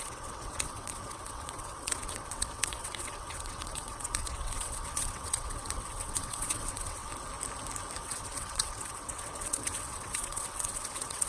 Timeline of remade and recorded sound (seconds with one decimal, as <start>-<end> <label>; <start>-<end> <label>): 0.0-7.1 remade; 7.1-8.0 recorded; 8.0-11.3 remade